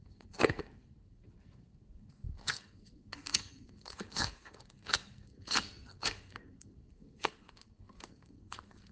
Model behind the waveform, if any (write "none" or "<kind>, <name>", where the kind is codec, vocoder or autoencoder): codec, SNAC